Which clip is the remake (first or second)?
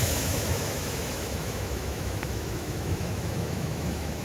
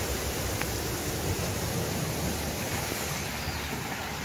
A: first